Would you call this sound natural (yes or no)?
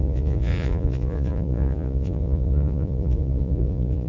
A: no